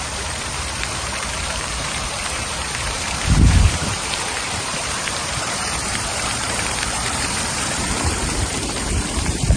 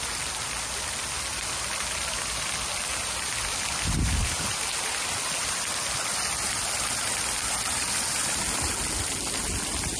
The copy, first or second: first